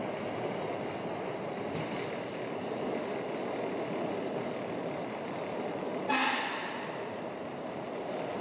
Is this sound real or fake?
real